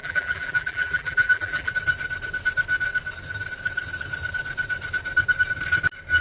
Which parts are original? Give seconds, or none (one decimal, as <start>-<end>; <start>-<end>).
1.7-6.2